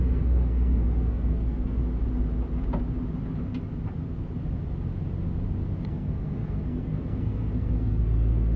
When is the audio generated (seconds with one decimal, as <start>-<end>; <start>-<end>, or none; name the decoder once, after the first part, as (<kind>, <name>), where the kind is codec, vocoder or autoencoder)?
0.0-1.8 (codec, SNAC); 5.9-8.6